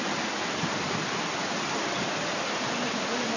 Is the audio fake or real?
real